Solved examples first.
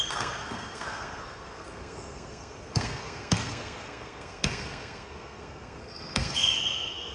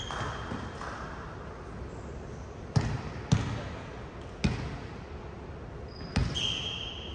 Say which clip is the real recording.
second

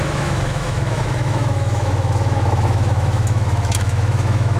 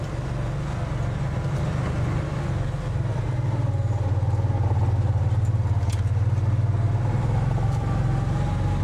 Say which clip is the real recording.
second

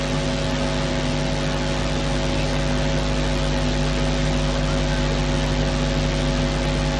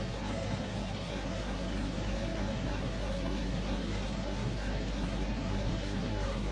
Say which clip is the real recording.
first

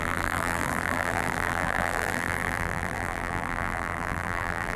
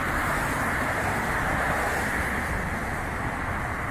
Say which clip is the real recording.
second